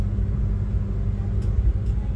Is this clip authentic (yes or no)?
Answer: yes